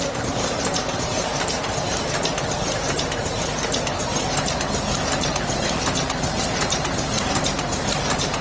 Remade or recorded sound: remade